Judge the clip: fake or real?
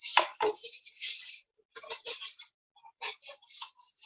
fake